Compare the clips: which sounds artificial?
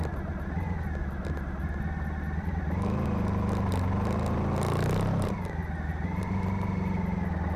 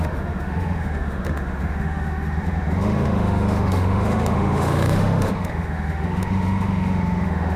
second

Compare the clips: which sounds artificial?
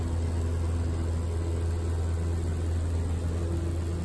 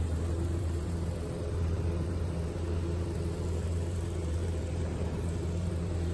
second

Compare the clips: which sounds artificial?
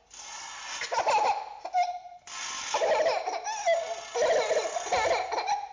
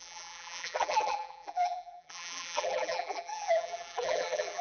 second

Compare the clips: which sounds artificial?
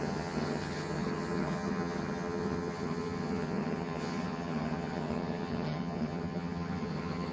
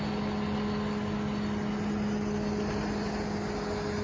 first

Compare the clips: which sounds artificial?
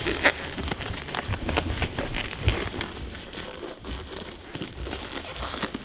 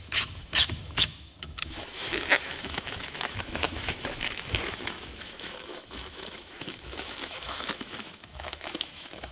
second